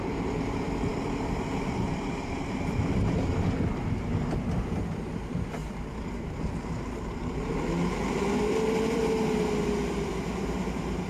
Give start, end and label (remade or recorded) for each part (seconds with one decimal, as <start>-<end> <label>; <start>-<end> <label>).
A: 0.0-9.0 remade; 9.0-10.1 recorded; 10.1-11.1 remade